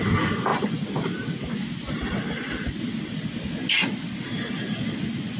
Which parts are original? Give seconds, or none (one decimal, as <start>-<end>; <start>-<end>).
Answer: 0.0-5.4